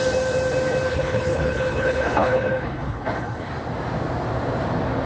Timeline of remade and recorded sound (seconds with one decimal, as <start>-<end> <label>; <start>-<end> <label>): 0.0-0.9 recorded; 0.9-3.5 remade; 3.5-5.1 recorded